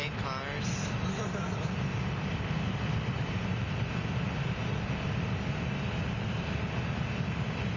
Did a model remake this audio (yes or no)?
no